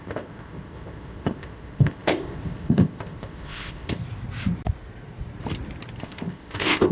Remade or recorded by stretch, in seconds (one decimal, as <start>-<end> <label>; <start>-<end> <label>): 0.0-4.0 remade; 4.0-6.0 recorded; 6.0-6.9 remade

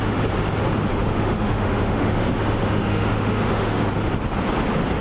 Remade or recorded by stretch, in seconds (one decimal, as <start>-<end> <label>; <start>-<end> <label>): 0.0-0.9 recorded; 0.9-3.9 remade; 3.9-5.0 recorded

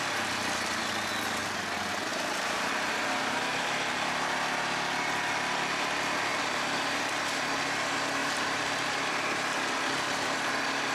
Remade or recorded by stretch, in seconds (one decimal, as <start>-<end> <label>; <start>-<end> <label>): 0.0-2.1 recorded; 2.1-2.7 remade; 2.7-6.3 recorded; 6.3-7.0 remade; 7.0-8.2 recorded; 8.2-9.0 remade; 9.0-10.9 recorded

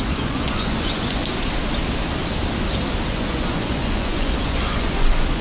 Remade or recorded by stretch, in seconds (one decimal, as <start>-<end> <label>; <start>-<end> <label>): 0.0-1.2 remade; 1.2-3.1 recorded; 3.1-5.4 remade

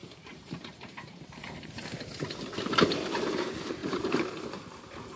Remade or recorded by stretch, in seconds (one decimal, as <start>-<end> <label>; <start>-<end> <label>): 0.0-2.3 remade; 2.3-3.8 recorded; 3.8-4.5 remade; 4.5-5.2 recorded

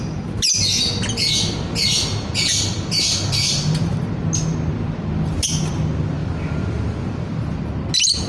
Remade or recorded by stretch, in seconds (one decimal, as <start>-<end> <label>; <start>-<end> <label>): 0.0-8.3 recorded

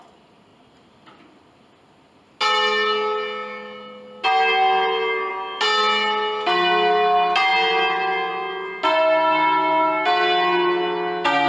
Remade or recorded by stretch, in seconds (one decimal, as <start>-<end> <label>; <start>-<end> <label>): 0.0-11.5 recorded